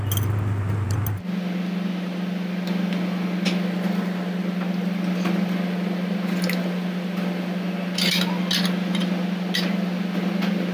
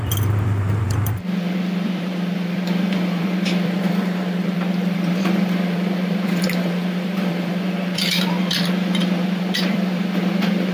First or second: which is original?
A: first